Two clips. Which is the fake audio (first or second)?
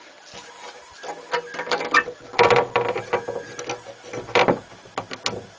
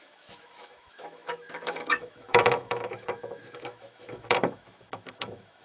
second